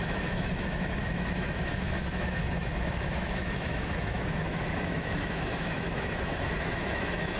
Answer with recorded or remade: remade